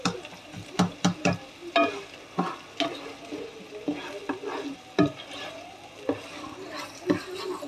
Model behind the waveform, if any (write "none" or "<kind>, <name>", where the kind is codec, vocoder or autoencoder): none